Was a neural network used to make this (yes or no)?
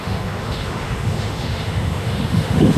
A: yes